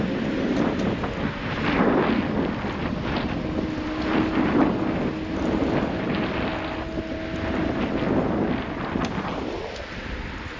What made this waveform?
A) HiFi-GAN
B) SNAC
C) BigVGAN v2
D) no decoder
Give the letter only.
D